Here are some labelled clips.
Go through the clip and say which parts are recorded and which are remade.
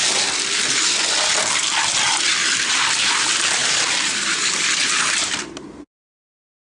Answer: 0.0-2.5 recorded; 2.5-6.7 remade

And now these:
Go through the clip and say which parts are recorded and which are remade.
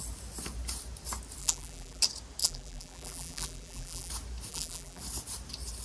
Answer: 0.0-1.4 recorded; 1.4-2.0 remade; 2.0-2.4 recorded; 2.4-4.1 remade; 4.1-4.5 recorded; 4.5-5.0 remade; 5.0-5.8 recorded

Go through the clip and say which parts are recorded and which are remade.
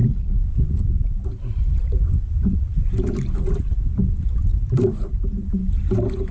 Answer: 0.0-4.5 recorded; 4.5-5.5 remade; 5.5-6.3 recorded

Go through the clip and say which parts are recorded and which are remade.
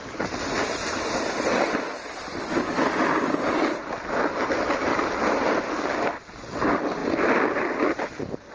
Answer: 0.0-4.9 recorded; 4.9-6.0 remade; 6.0-8.5 recorded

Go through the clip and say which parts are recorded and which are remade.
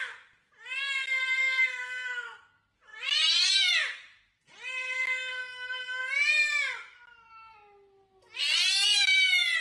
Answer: 0.0-2.9 recorded; 2.9-3.5 remade; 3.5-9.6 recorded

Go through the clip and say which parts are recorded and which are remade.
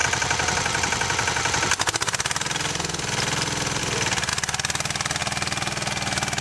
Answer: 0.0-6.4 recorded